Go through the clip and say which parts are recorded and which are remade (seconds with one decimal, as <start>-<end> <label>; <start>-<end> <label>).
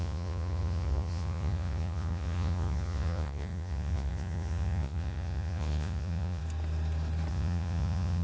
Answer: 0.0-6.4 remade; 6.4-7.3 recorded; 7.3-8.2 remade